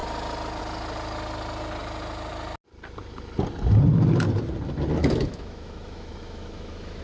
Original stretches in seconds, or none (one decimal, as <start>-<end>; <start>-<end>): 0.0-5.0

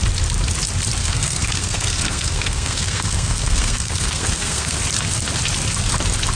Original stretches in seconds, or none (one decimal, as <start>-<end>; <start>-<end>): 0.0-1.0; 4.8-6.4